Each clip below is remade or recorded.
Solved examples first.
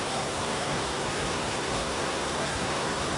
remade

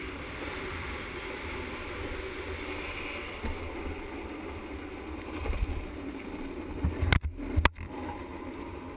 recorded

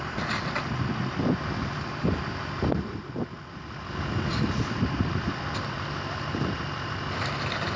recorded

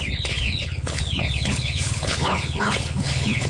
remade